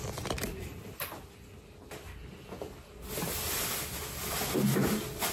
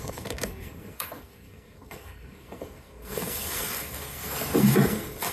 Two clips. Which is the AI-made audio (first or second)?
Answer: second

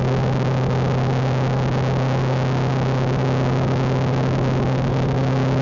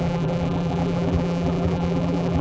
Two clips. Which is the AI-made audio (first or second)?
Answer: second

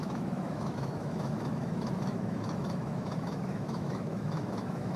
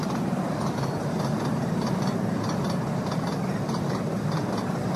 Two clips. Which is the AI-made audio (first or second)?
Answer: first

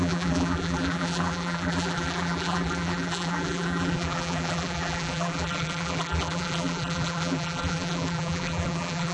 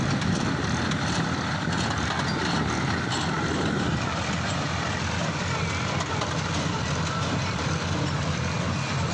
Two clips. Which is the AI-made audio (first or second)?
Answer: first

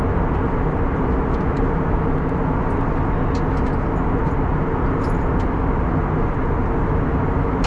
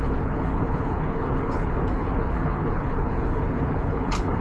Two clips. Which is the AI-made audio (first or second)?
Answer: second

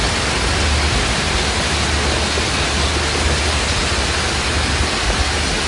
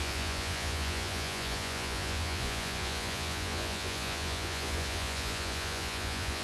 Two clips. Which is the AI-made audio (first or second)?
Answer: second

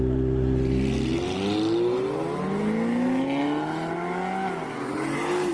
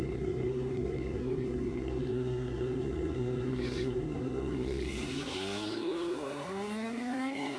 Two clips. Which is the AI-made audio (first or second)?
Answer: second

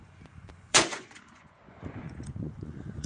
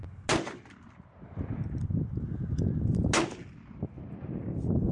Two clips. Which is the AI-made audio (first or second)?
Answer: first